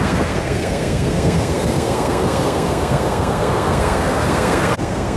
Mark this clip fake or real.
fake